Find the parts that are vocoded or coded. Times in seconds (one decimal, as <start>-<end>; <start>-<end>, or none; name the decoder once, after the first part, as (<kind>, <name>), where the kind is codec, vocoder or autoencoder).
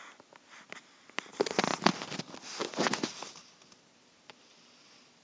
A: none